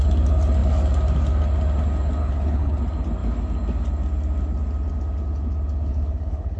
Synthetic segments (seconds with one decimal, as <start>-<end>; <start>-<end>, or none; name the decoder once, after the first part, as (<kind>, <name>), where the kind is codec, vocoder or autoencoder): 2.2-2.8 (codec, HILCodec); 5.9-6.6